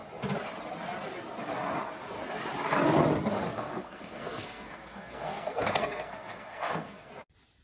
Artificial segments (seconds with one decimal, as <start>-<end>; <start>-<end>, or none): 3.5-7.1